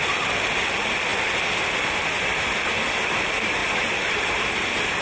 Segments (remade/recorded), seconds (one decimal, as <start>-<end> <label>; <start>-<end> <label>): 0.0-3.6 recorded; 3.6-4.3 remade; 4.3-5.0 recorded